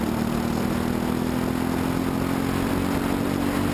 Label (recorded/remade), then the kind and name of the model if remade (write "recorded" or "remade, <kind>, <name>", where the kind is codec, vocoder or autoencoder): recorded